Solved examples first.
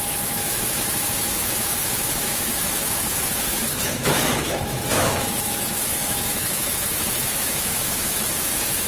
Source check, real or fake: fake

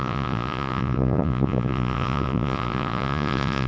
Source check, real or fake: fake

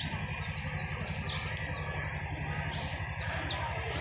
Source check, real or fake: real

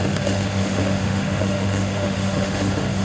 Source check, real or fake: fake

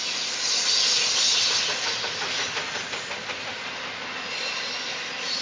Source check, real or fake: real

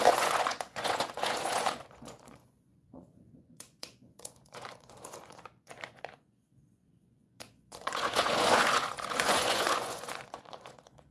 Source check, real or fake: fake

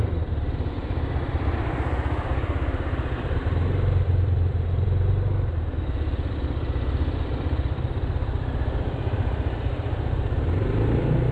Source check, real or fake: fake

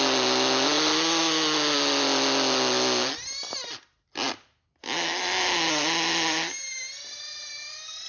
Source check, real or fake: real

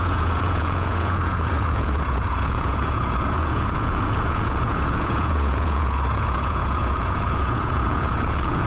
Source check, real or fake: fake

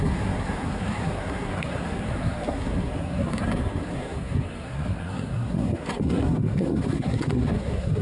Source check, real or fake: fake